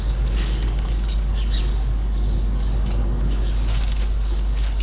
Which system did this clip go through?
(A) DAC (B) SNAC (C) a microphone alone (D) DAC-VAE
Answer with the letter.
A